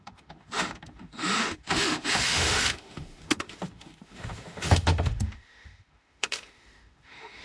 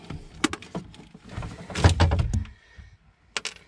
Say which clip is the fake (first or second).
first